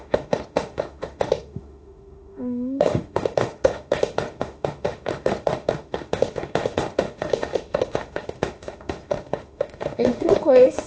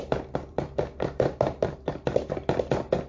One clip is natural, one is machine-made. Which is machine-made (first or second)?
first